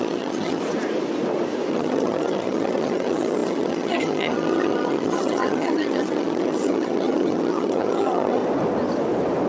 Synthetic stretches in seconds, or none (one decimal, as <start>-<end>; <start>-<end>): 0.0-0.6; 1.7-8.4